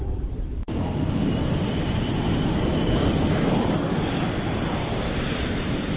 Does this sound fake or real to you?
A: real